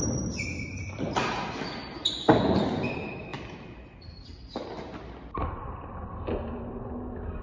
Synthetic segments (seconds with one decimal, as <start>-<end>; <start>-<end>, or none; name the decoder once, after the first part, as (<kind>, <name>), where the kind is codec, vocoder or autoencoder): none